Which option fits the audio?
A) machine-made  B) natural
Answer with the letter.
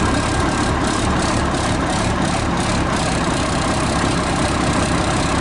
A